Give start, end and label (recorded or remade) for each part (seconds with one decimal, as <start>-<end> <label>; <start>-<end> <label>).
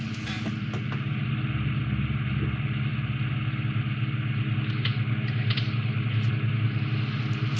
0.0-7.6 recorded